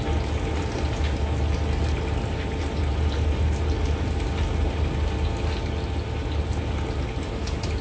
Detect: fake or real real